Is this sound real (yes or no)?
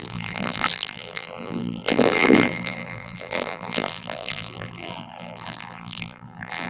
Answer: no